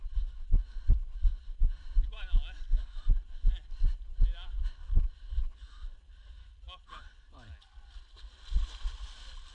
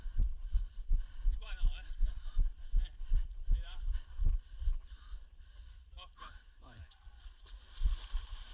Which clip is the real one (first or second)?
first